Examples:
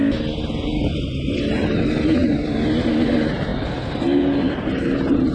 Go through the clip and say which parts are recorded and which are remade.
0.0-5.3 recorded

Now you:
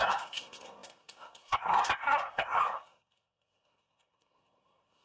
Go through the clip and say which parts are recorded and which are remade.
0.0-5.0 remade

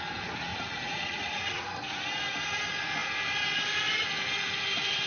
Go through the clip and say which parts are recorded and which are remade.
0.0-0.5 recorded; 0.5-1.7 remade; 1.7-5.1 recorded

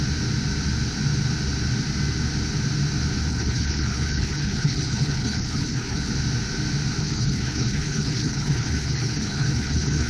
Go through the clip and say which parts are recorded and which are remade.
0.0-3.3 recorded; 3.3-6.1 remade; 6.1-7.0 recorded; 7.0-10.1 remade

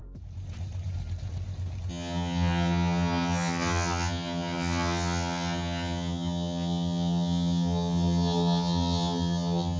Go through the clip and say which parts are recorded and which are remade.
0.0-1.9 recorded; 1.9-9.8 remade

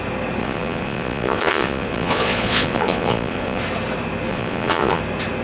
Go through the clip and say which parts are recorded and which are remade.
0.0-0.4 recorded; 0.4-3.6 remade; 3.6-4.3 recorded; 4.3-5.0 remade; 5.0-5.4 recorded

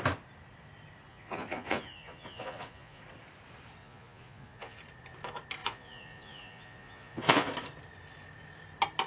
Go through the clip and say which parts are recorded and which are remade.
0.0-1.1 recorded; 1.1-3.0 remade; 3.0-3.8 recorded; 3.8-4.8 remade; 4.8-5.6 recorded; 5.6-7.5 remade; 7.5-9.1 recorded

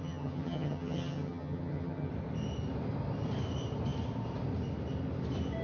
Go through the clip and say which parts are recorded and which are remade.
0.0-2.1 remade; 2.1-5.6 recorded